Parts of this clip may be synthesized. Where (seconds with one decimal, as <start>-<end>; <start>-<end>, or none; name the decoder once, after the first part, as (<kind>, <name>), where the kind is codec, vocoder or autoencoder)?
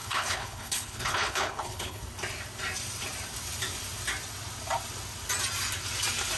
0.0-2.0 (codec, HILCodec)